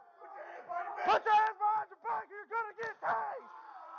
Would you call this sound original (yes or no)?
yes